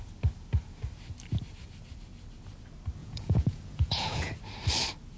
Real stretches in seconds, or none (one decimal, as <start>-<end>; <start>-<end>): 0.0-3.0; 4.3-5.2